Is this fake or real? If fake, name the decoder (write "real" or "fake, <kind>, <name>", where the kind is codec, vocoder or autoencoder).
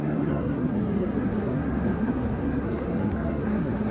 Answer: fake, codec, SNAC